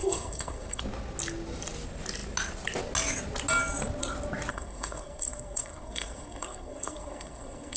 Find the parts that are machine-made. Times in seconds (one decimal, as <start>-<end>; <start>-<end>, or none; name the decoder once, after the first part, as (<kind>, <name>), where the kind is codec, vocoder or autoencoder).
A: 0.0-0.8 (codec, SNAC); 4.5-7.8